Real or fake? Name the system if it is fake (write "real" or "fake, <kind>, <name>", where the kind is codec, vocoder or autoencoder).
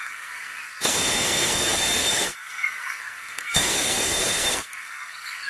fake, codec, SNAC